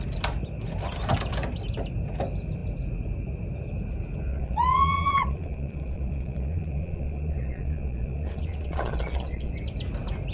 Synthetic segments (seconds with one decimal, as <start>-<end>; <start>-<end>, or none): 4.3-9.5

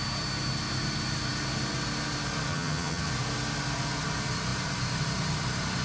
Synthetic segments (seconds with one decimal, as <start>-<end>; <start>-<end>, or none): 2.5-3.1

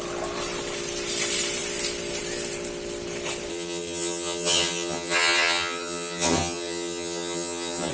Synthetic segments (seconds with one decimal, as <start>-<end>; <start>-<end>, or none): 3.5-7.9

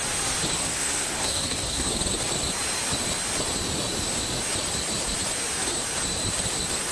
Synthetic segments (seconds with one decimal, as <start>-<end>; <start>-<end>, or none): 0.6-1.9

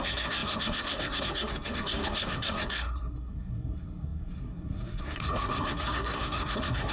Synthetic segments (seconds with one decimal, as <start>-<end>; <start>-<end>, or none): 0.0-6.9

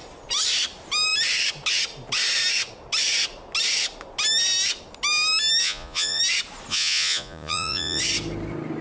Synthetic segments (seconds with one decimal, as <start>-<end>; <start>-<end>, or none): 5.6-6.2; 6.7-8.0

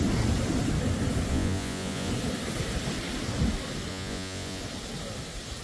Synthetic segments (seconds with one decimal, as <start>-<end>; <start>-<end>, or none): 1.3-2.1; 3.9-4.6